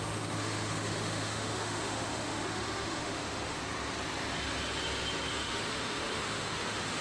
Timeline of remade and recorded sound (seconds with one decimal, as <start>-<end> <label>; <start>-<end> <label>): 0.0-3.6 remade; 3.6-5.3 recorded; 5.3-7.0 remade